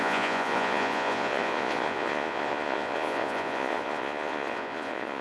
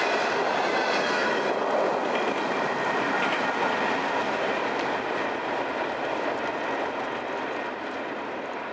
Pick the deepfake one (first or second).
first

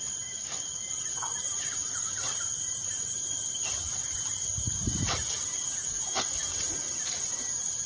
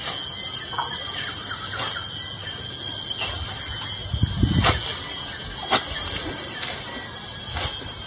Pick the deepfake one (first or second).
first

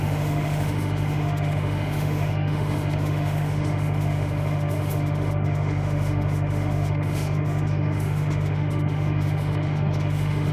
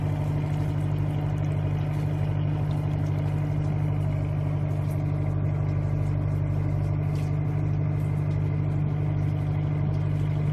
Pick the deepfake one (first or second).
first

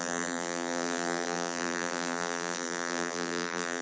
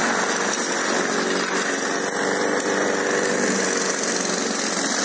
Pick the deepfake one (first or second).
first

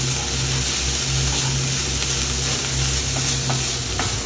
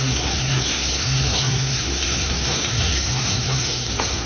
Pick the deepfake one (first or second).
second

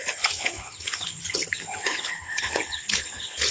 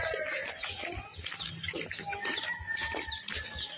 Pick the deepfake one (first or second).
first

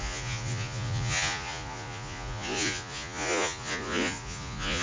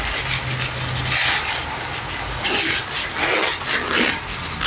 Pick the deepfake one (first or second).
first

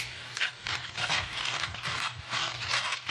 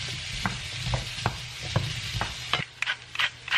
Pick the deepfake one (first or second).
first